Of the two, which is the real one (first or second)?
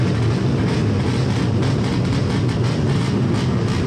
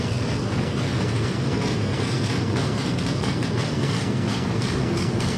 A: first